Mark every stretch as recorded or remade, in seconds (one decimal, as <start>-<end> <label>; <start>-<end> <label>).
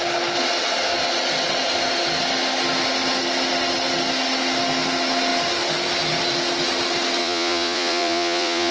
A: 0.0-7.2 recorded; 7.2-8.7 remade